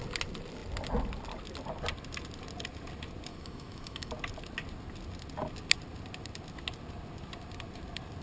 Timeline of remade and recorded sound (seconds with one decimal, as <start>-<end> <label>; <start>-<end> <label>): 0.0-3.3 recorded; 3.3-4.1 remade; 4.1-8.2 recorded